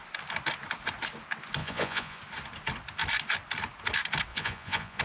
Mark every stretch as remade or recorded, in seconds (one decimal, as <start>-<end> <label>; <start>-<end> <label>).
0.0-1.6 recorded; 1.6-2.2 remade; 2.2-4.3 recorded; 4.3-5.0 remade